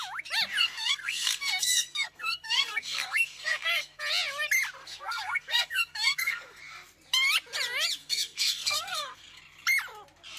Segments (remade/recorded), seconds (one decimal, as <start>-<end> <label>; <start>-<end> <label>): 0.0-0.6 recorded; 0.6-4.0 remade; 4.0-4.8 recorded; 4.8-6.6 remade; 6.6-8.0 recorded; 8.0-9.4 remade; 9.4-10.4 recorded